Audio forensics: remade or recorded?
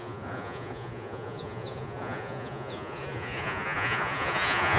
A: remade